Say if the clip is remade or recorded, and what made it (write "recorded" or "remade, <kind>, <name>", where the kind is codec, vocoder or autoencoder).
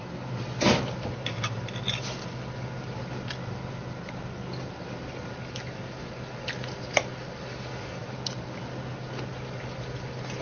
recorded